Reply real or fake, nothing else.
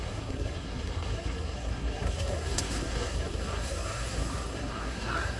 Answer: fake